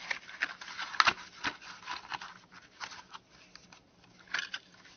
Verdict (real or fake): real